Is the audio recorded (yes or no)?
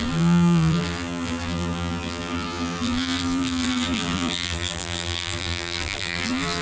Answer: no